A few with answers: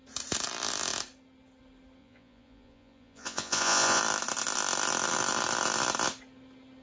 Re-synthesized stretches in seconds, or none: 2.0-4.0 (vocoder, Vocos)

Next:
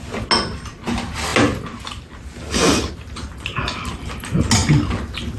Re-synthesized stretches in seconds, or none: none

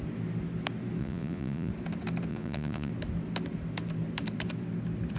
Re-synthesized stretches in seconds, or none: 1.0-1.7 (vocoder, Vocos); 2.3-2.9

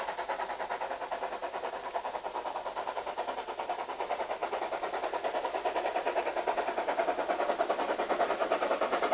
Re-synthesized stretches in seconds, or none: none

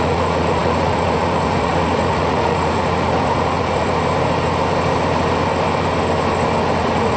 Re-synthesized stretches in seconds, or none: 0.0-3.9 (vocoder, Vocos); 6.8-7.2